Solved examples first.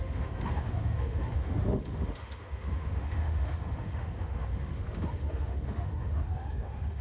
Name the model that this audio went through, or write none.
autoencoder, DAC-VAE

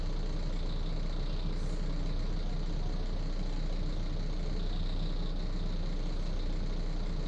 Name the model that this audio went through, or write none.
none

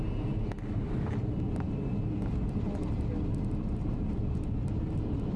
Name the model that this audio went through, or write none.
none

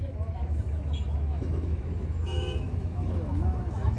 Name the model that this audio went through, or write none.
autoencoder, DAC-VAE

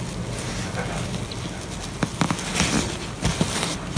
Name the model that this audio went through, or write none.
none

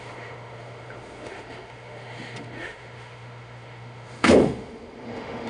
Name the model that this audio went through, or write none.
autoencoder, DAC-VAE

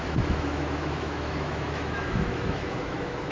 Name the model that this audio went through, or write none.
autoencoder, DAC-VAE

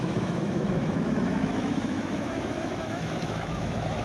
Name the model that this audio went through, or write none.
autoencoder, DAC-VAE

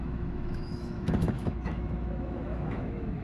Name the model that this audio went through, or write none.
autoencoder, DAC-VAE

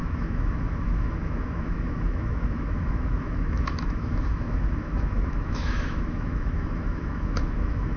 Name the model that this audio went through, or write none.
autoencoder, DAC-VAE